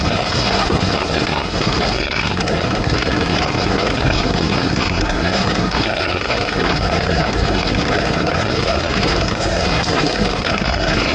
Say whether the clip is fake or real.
fake